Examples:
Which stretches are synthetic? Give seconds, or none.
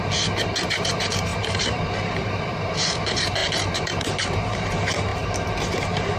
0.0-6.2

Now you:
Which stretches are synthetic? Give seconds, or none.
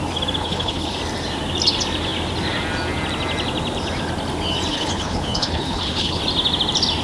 0.4-1.0; 4.7-6.2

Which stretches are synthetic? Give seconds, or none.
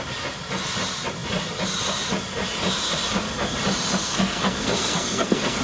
4.0-5.6